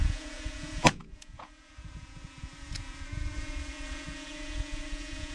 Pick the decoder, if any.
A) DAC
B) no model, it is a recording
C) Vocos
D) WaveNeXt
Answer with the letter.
C